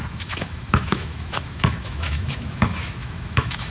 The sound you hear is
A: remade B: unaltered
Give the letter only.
A